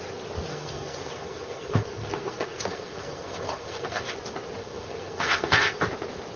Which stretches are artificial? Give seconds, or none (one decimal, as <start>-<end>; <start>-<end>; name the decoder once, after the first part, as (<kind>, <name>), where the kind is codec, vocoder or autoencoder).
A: 0.5-4.1 (codec, SNAC); 4.6-5.8